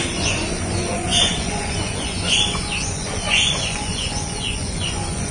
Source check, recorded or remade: remade